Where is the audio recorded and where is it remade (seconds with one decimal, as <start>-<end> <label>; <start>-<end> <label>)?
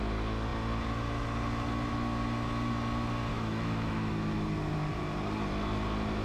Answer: 0.0-3.3 recorded; 3.3-4.1 remade; 4.1-6.2 recorded